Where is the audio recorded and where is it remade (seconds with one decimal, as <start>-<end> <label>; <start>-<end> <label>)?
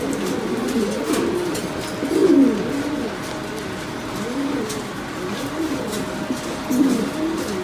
0.0-7.6 recorded